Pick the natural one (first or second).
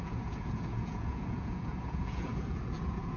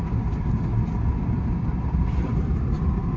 second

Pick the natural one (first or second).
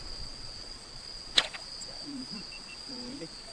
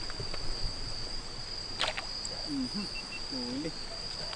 second